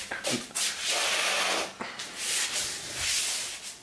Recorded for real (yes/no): yes